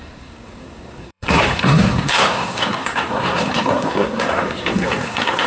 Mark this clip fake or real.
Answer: fake